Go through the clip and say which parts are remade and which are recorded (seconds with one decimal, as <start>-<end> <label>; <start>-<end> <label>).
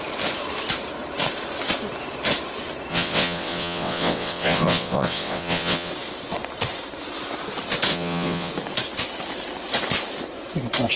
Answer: 0.0-2.9 recorded; 2.9-5.9 remade; 5.9-7.9 recorded; 7.9-8.5 remade; 8.5-11.0 recorded